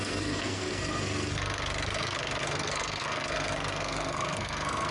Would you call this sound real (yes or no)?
no